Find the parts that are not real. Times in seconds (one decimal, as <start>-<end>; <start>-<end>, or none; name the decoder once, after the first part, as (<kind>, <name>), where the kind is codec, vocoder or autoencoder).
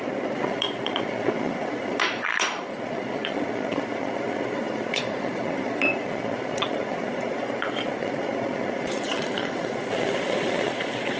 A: 0.0-11.2 (vocoder, Vocos)